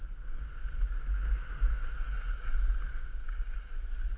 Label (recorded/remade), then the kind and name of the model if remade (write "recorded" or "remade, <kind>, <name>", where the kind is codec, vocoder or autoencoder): recorded